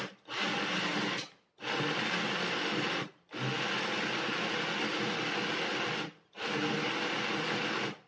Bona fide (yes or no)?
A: yes